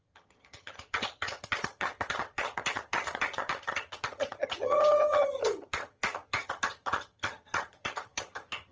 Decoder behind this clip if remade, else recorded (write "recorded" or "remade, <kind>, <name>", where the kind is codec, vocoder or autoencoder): remade, vocoder, HiFi-GAN